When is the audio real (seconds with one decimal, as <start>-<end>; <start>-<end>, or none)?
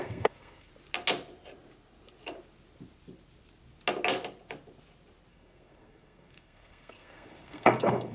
0.7-5.3